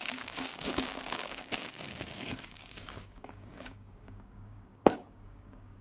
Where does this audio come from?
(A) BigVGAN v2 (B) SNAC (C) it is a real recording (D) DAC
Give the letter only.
D